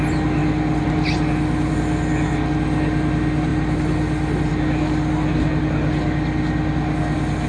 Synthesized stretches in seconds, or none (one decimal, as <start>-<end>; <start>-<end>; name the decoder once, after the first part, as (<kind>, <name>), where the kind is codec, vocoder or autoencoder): none

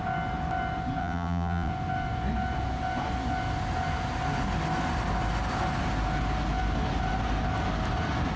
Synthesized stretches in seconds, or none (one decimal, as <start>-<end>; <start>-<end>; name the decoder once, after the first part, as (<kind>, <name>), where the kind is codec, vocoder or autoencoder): 1.0-1.7 (vocoder, WaveNeXt)

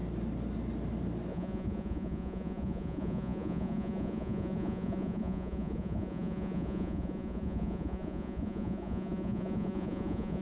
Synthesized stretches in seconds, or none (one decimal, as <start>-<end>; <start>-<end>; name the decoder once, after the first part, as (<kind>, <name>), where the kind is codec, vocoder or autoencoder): 1.3-10.4 (vocoder, Vocos)

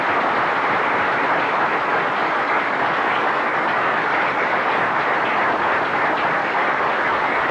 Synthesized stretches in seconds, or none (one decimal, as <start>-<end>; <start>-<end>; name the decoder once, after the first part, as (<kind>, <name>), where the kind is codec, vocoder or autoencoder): 1.9-5.0 (codec, DAC); 6.4-7.5

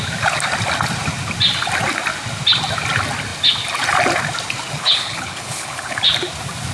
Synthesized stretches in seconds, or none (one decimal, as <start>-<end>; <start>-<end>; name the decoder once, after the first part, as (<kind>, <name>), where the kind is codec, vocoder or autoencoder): 4.8-6.0 (codec, HILCodec)

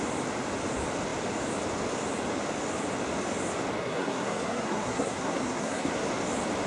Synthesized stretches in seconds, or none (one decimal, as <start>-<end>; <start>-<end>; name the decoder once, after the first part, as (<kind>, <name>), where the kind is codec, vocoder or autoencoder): 3.8-6.0 (codec, SNAC)

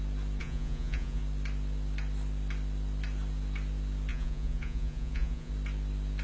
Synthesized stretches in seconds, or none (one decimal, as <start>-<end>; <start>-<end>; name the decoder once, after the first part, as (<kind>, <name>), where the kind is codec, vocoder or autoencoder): 0.4-1.2 (vocoder, Vocos); 4.1-5.5